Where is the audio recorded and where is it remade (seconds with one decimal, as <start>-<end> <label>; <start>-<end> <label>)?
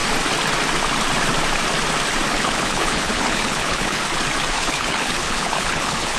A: 0.0-2.3 recorded; 2.3-4.0 remade; 4.0-4.5 recorded; 4.5-6.2 remade